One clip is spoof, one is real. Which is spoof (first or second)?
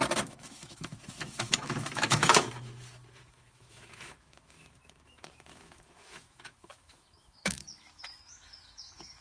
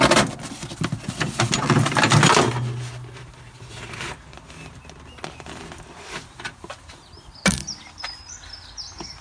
first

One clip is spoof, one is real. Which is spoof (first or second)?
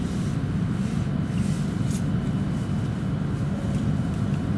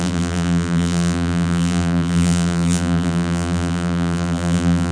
second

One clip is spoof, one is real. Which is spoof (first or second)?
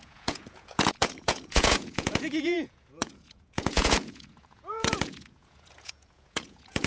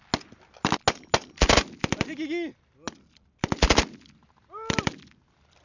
first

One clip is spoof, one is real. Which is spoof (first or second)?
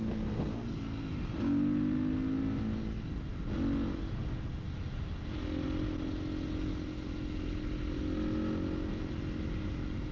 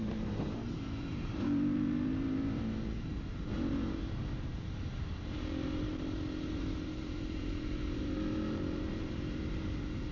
second